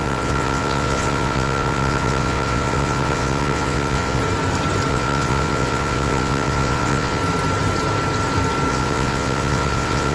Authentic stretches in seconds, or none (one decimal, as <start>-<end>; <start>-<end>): 4.2-4.9; 7.2-8.7